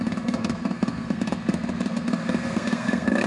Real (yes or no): no